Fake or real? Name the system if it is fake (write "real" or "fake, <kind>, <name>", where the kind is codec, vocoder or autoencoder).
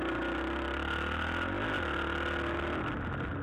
real